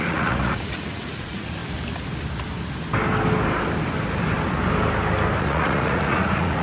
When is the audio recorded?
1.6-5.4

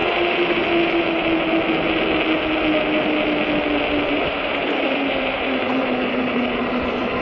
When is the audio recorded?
0.0-4.1

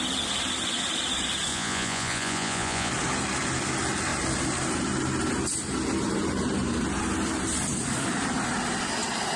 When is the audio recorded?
0.0-1.5; 2.9-9.4

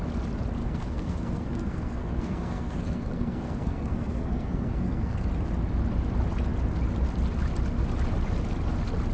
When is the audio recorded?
0.0-0.6; 5.3-9.1

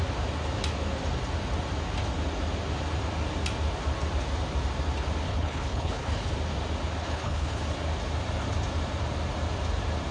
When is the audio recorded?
0.0-5.3; 6.3-7.0; 7.6-10.1

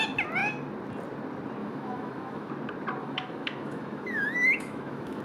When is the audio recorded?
0.0-1.6; 2.5-3.0